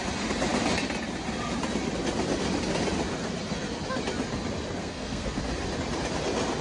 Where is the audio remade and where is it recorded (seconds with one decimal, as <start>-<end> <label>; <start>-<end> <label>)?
0.0-4.8 recorded; 4.8-5.4 remade; 5.4-6.6 recorded